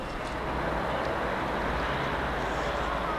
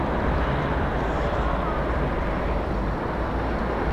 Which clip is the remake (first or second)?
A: second